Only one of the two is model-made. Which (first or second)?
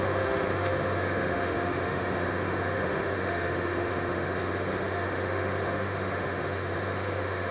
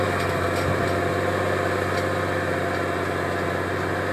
first